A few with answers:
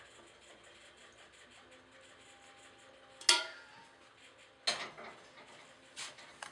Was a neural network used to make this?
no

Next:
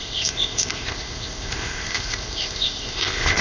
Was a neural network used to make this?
yes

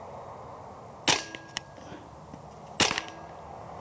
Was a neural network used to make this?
no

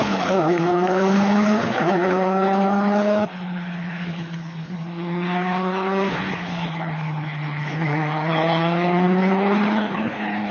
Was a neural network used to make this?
yes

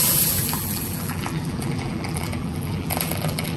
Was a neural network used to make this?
yes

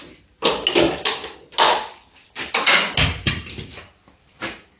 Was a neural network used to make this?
no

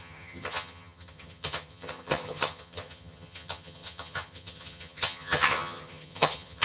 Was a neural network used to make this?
yes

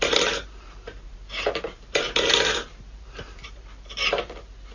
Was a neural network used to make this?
yes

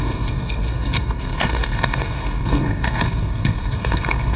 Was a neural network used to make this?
yes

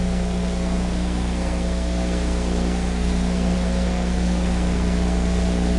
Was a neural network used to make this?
yes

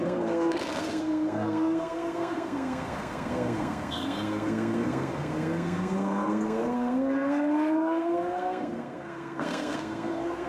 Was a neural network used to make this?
yes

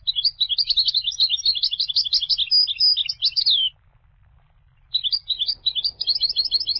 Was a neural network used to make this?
no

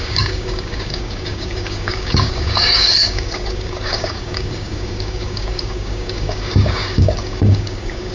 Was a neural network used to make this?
yes